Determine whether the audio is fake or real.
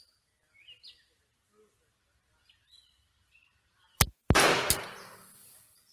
fake